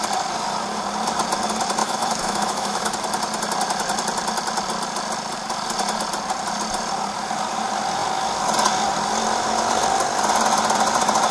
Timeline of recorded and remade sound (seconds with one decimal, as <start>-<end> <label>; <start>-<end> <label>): 0.0-1.8 recorded; 1.8-2.9 remade; 2.9-11.3 recorded